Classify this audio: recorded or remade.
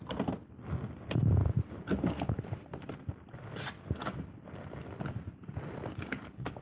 recorded